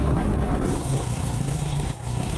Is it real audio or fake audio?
fake